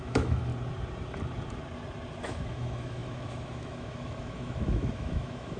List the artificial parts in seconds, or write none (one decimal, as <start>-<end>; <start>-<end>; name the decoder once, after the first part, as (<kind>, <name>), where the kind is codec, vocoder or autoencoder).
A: 0.0-0.5 (autoencoder, DAC-VAE); 2.2-5.6